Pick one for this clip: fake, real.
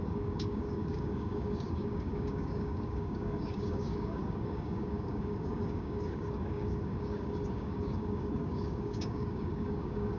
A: fake